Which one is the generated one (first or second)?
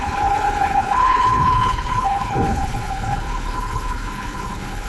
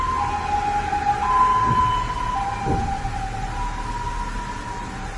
first